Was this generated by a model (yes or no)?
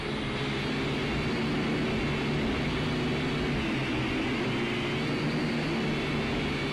no